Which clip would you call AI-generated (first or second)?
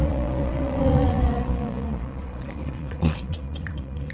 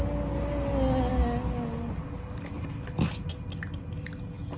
first